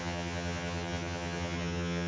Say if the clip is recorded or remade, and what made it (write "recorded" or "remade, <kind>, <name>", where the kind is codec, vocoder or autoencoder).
remade, vocoder, HiFi-GAN